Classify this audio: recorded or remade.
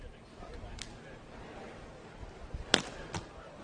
recorded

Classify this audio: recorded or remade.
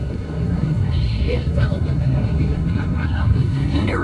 remade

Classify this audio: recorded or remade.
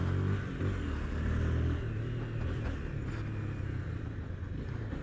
recorded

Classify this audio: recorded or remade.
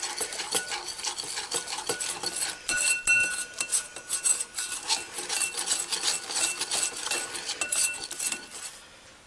recorded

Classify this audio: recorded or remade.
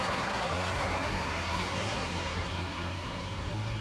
remade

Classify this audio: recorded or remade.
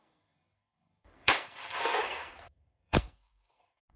remade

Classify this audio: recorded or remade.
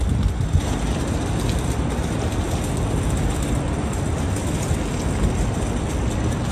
recorded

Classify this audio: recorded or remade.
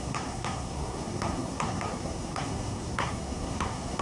remade